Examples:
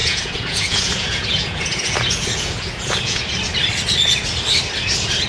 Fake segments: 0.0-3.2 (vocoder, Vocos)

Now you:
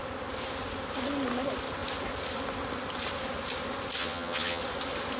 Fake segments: 4.0-4.6 (vocoder, HiFi-GAN)

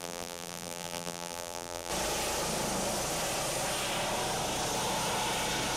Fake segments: 0.0-1.9 (vocoder, BigVGAN v2)

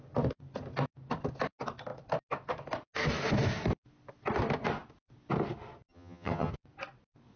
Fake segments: 5.9-6.5 (vocoder, HiFi-GAN)

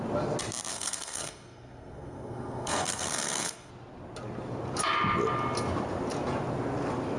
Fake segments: 0.7-3.7 (codec, SNAC)